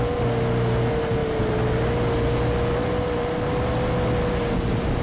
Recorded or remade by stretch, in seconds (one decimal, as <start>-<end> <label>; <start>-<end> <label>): 0.0-5.0 recorded